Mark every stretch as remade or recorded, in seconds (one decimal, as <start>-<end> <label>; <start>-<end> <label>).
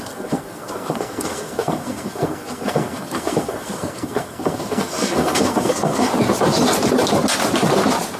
0.0-6.1 remade; 6.1-8.2 recorded